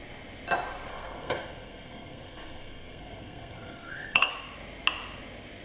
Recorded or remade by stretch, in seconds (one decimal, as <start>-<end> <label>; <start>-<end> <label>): 0.0-0.9 recorded; 0.9-4.3 remade; 4.3-5.6 recorded